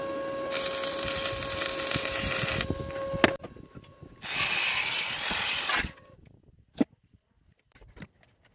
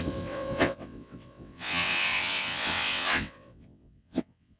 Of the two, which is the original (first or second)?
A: first